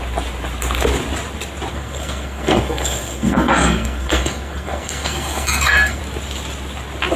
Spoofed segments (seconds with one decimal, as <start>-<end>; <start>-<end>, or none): 1.7-6.0